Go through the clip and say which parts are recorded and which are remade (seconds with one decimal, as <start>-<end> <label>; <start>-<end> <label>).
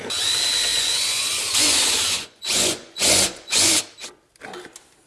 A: 0.0-0.7 recorded; 0.7-3.8 remade; 3.8-5.1 recorded